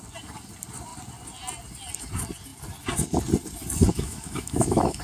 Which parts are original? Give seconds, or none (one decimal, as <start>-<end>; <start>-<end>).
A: 0.0-3.9